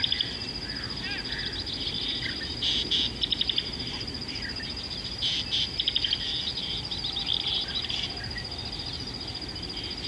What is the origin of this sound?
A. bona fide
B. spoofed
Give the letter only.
A